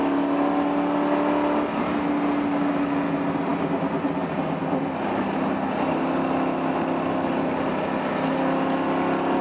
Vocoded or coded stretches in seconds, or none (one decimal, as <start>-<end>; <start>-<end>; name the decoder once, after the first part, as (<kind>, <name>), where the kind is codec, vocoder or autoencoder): none

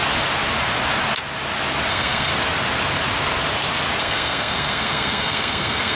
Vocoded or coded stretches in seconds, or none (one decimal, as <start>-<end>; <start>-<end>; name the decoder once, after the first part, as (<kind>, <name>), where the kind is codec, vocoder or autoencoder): 1.9-2.3 (codec, SNAC); 4.0-5.9

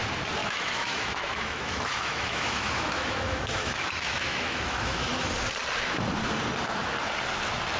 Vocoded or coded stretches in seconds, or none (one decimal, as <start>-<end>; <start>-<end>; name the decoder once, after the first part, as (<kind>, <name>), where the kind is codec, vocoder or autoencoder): 0.4-5.1 (autoencoder, DAC-VAE)